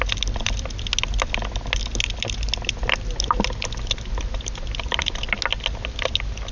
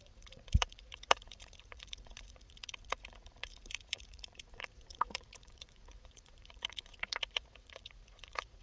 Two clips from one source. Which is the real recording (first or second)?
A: first